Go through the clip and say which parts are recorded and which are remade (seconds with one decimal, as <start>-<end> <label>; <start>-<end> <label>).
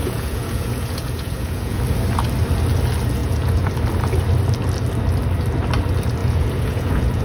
0.0-1.8 remade; 1.8-3.2 recorded; 3.2-3.7 remade; 3.7-6.2 recorded; 6.2-7.2 remade